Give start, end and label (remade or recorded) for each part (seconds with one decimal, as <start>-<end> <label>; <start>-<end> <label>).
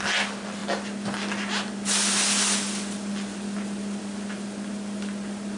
0.0-5.6 recorded